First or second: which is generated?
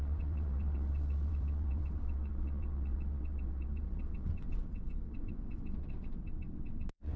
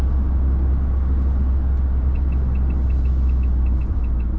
first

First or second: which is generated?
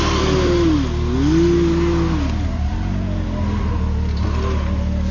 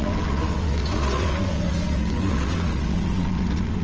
second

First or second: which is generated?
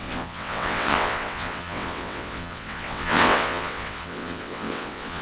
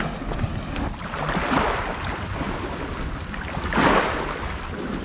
first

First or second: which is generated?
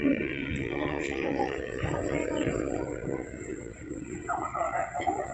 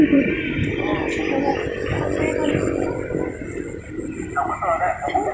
first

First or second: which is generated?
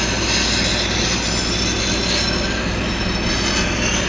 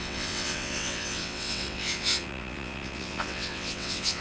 second